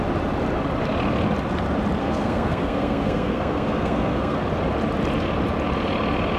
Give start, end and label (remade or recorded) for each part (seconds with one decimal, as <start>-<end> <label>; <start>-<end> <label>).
0.0-2.0 recorded; 2.0-4.4 remade; 4.4-6.4 recorded